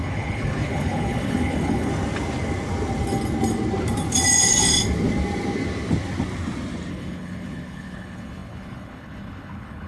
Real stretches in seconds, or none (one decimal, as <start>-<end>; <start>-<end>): 1.9-6.9